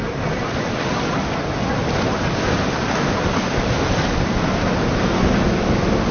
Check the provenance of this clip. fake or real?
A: real